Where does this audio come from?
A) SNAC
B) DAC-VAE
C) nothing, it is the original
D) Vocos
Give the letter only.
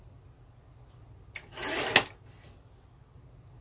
C